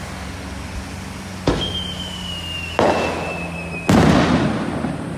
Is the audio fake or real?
real